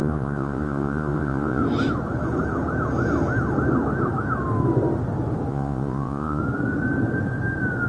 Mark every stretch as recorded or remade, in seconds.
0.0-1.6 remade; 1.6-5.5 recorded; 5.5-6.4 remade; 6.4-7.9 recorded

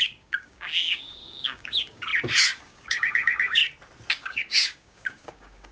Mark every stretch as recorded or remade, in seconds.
0.0-2.1 remade; 2.1-2.6 recorded; 2.6-3.6 remade; 3.6-4.1 recorded; 4.1-5.7 remade